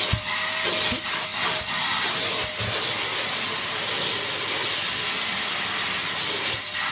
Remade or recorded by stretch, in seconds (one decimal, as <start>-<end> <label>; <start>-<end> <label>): 0.0-6.9 recorded